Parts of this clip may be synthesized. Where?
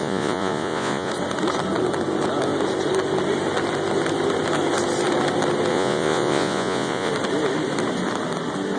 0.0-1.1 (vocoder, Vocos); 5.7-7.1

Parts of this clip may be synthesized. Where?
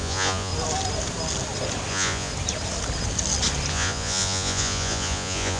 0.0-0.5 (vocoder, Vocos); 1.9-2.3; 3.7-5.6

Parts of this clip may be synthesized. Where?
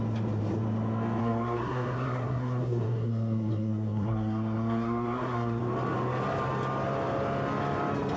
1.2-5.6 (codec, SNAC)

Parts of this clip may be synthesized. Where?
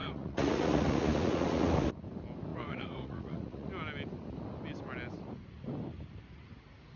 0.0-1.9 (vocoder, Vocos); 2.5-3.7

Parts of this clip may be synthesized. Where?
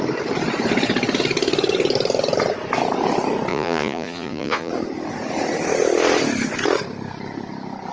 3.5-4.7 (vocoder, Vocos)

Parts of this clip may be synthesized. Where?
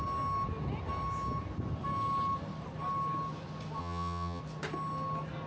3.8-4.4 (vocoder, HiFi-GAN)